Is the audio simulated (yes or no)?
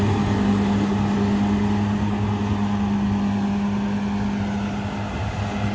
no